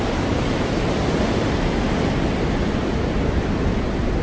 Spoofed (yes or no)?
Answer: yes